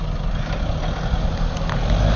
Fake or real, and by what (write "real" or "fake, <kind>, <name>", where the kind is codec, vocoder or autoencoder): real